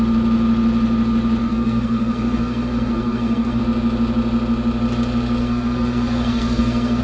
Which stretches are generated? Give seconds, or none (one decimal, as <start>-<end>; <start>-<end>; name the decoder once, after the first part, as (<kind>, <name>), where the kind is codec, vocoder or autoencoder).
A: 1.4-3.6 (codec, SNAC); 5.4-7.0